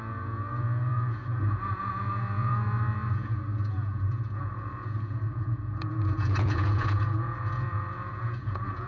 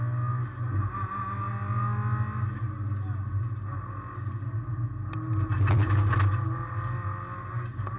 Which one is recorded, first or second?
second